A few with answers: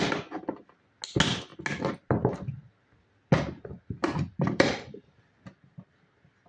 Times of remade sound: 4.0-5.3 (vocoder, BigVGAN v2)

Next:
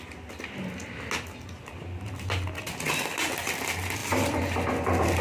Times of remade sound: 4.0-4.6 (vocoder, BigVGAN v2)

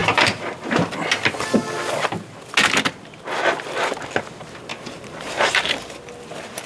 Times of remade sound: 0.0-0.5 (vocoder, BigVGAN v2); 4.7-5.8

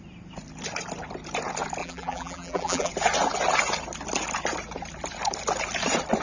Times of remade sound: 1.8-2.9 (vocoder, BigVGAN v2)

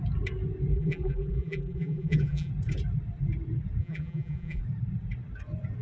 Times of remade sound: 0.7-2.5 (vocoder, BigVGAN v2); 3.8-4.6

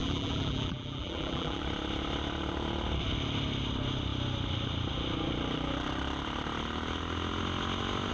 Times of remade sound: 0.0-1.6 (vocoder, BigVGAN v2)